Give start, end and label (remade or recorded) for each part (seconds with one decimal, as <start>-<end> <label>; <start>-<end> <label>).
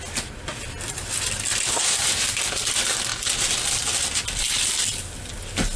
0.0-5.8 recorded